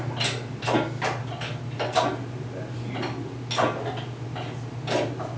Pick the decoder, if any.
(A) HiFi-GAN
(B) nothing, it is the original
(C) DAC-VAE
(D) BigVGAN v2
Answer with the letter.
B